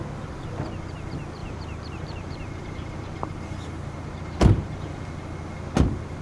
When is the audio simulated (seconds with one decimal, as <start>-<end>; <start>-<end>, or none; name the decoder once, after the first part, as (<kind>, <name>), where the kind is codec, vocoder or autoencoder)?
1.4-5.1 (vocoder, BigVGAN v2)